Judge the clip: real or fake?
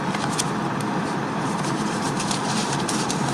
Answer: real